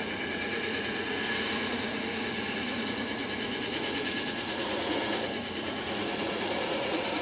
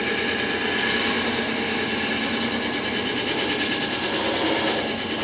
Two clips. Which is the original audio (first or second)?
second